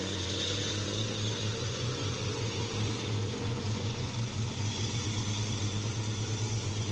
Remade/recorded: remade